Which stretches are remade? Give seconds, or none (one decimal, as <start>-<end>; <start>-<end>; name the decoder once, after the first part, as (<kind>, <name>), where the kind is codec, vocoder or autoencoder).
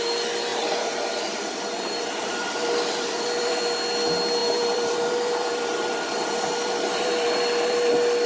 0.5-3.6 (vocoder, BigVGAN v2); 4.4-7.9